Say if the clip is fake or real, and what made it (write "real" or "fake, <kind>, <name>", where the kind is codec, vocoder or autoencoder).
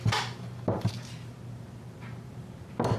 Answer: real